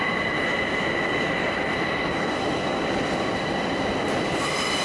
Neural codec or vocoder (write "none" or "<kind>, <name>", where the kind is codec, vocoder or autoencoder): none